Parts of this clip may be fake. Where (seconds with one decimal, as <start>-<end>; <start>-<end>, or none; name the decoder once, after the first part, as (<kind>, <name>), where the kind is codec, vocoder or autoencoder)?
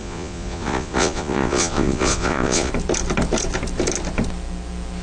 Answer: 0.0-2.7 (vocoder, Vocos)